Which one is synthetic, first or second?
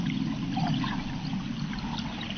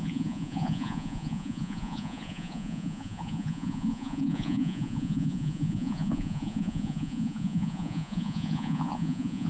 second